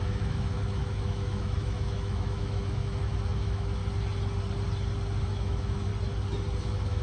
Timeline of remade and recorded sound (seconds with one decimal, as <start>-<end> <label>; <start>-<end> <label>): 0.0-3.8 remade; 3.8-5.2 recorded; 5.2-5.9 remade; 5.9-6.6 recorded; 6.6-7.0 remade